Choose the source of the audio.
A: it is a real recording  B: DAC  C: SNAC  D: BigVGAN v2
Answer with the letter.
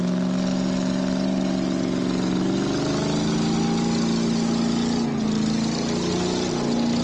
A